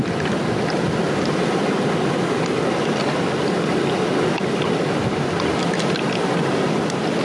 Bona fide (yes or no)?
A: yes